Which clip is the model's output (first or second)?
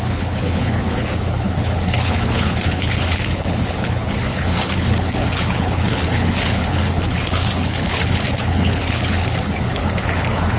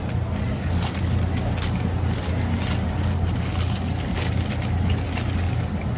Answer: first